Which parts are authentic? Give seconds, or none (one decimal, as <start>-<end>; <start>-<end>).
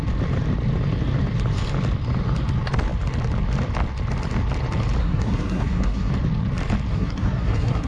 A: 0.0-5.0; 6.1-6.9